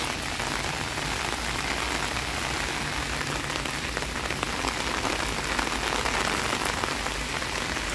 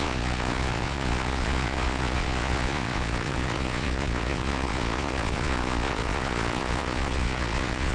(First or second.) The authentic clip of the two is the first